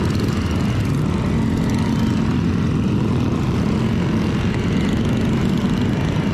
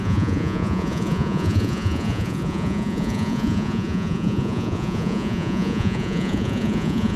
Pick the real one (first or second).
first